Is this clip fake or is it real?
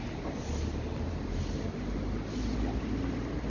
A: real